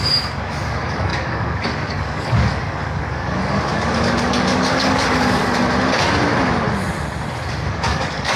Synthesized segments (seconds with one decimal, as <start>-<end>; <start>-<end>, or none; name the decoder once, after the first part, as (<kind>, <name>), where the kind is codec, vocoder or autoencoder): 0.0-5.4 (codec, DAC); 7.7-8.4